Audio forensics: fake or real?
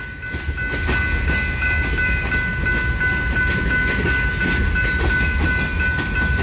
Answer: real